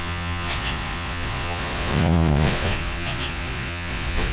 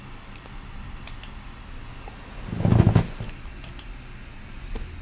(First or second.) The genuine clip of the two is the second